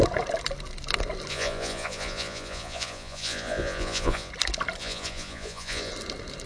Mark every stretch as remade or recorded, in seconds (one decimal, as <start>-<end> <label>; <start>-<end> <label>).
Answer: 0.0-1.3 recorded; 1.3-4.3 remade; 4.3-4.8 recorded; 4.8-5.9 remade; 5.9-6.5 recorded